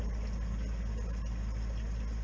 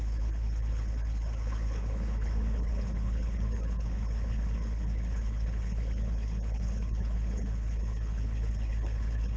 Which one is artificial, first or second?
second